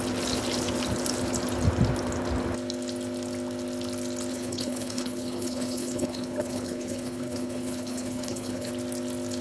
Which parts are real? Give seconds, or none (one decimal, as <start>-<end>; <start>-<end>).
0.0-4.3; 8.7-9.4